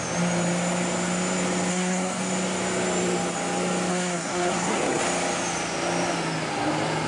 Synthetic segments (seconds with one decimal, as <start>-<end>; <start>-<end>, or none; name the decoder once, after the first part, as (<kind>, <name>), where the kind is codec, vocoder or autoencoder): 1.7-2.2 (codec, SNAC); 3.9-5.0